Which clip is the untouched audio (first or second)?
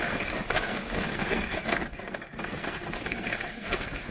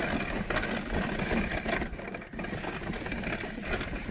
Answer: second